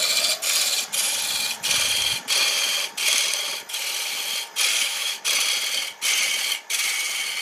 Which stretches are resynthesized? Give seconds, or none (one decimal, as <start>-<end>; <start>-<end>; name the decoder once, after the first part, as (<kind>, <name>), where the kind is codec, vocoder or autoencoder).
4.7-5.2 (autoencoder, DAC-VAE)